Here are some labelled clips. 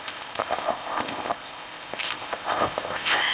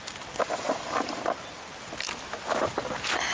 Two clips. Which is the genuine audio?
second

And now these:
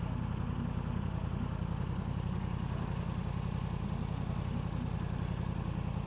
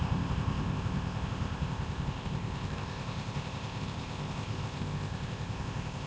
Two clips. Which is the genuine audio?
first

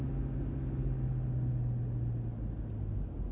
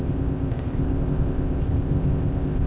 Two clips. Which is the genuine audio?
first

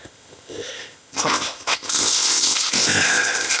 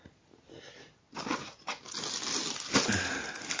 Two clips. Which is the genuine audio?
second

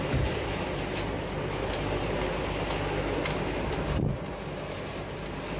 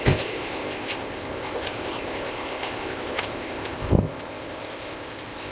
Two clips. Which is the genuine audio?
first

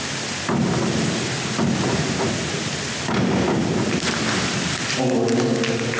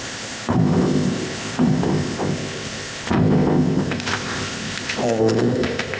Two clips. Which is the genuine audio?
first